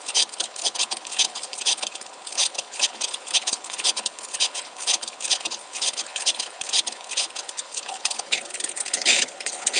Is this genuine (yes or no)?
no